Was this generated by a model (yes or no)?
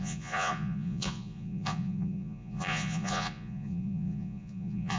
yes